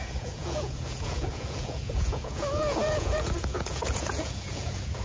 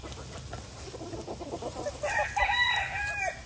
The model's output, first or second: first